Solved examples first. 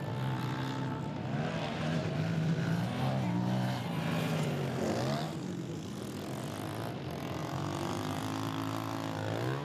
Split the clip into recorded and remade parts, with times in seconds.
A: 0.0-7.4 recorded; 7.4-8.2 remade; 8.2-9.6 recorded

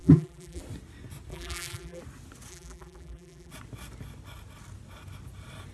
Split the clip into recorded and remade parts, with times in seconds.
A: 0.0-0.6 remade; 0.6-1.3 recorded; 1.3-2.0 remade; 2.0-2.5 recorded; 2.5-3.5 remade; 3.5-5.7 recorded

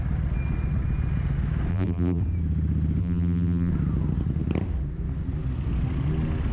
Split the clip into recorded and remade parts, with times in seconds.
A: 0.0-1.7 recorded; 1.7-2.2 remade; 2.2-3.0 recorded; 3.0-3.7 remade; 3.7-6.5 recorded

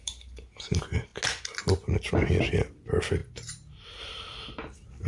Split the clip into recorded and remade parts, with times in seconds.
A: 0.0-1.1 remade; 1.1-2.4 recorded; 2.4-3.2 remade; 3.2-4.0 recorded; 4.0-5.1 remade

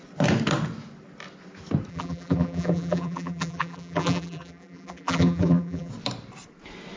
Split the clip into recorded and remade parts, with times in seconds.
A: 0.0-1.9 recorded; 1.9-5.9 remade; 5.9-7.0 recorded

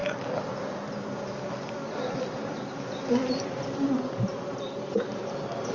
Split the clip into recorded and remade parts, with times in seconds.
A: 0.0-3.4 recorded; 3.4-5.7 remade

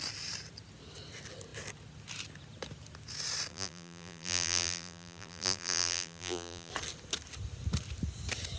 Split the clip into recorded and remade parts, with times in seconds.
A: 0.0-3.5 recorded; 3.5-6.7 remade; 6.7-8.6 recorded

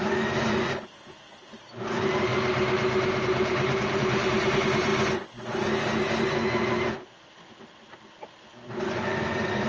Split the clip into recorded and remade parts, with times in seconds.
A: 0.0-2.3 remade; 2.3-3.2 recorded; 3.2-4.9 remade; 4.9-8.8 recorded; 8.8-9.7 remade